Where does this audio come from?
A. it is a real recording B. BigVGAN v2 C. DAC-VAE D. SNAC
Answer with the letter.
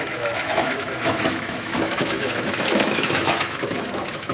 C